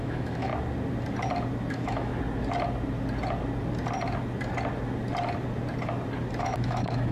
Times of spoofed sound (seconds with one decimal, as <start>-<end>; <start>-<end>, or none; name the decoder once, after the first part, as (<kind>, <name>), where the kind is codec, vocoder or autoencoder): 0.0-0.5 (autoencoder, DAC-VAE); 1.7-2.1; 6.4-7.1